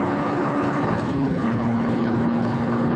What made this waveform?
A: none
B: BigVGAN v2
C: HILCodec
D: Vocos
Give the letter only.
C